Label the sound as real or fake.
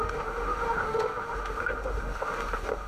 fake